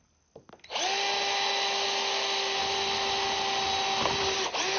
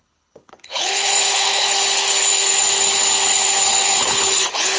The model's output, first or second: second